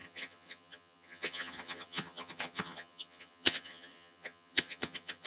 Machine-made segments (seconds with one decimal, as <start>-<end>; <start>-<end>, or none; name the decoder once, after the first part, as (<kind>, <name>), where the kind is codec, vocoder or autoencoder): 0.0-5.3 (vocoder, HiFi-GAN)